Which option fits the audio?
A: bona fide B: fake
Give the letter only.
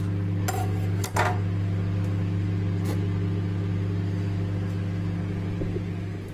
A